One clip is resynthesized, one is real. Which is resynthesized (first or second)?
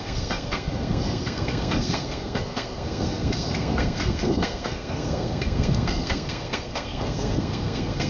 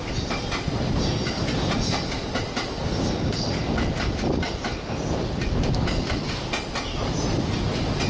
first